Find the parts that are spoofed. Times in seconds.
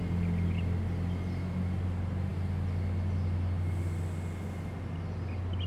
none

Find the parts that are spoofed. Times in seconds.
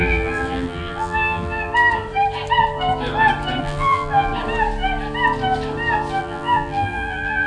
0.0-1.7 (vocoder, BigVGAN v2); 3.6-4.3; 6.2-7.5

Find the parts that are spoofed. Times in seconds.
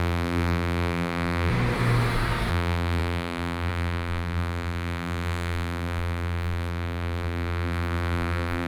0.0-1.5 (vocoder, BigVGAN v2); 2.5-8.7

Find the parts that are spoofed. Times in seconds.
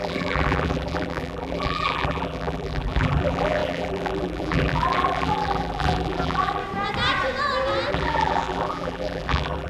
0.0-6.6 (vocoder, BigVGAN v2); 7.9-9.7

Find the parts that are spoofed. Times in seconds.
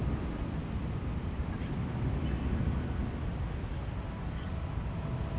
none